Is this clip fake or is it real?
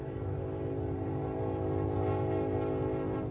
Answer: real